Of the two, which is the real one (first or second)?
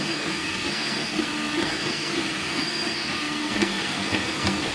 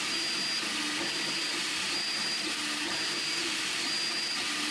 second